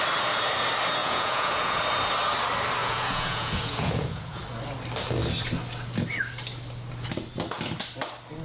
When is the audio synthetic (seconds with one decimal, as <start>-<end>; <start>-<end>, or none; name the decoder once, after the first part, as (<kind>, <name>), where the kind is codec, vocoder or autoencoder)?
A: 1.0-1.8 (vocoder, Vocos); 2.8-4.4